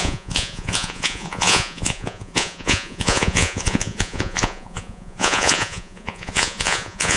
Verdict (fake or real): fake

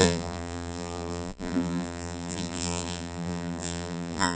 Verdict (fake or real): fake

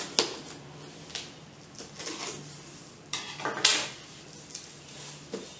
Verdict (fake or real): real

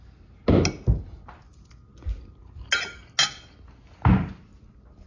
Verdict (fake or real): real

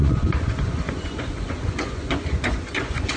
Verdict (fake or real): fake